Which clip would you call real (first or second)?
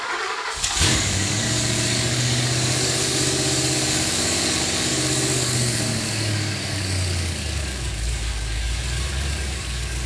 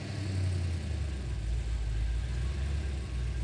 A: second